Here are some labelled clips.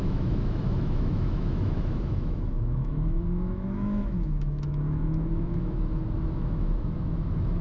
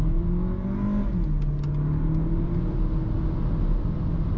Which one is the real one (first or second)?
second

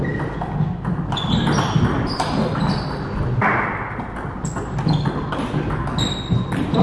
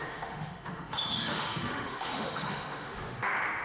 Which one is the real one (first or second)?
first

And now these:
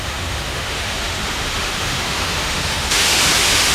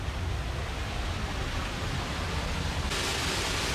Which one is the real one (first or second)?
second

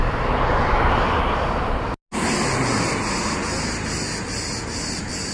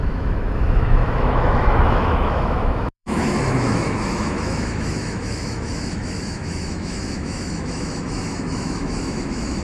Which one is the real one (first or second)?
first